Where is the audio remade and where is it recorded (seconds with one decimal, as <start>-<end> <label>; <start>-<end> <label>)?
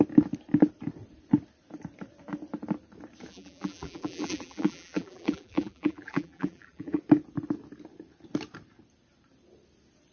0.0-3.3 recorded; 3.3-7.0 remade; 7.0-10.1 recorded